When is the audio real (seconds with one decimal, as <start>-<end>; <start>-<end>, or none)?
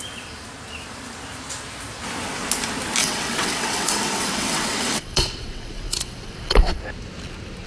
0.0-3.0; 6.8-7.7